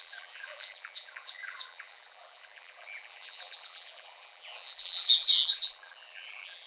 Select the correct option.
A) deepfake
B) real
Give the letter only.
A